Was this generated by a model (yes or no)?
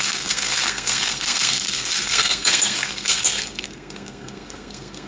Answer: yes